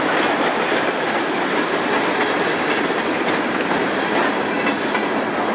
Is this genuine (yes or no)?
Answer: yes